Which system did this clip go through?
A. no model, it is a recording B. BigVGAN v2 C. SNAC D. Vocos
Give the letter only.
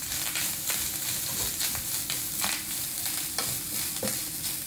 A